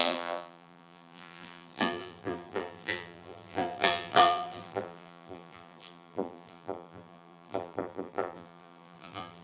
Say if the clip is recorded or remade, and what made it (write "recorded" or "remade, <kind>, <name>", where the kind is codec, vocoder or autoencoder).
remade, vocoder, BigVGAN v2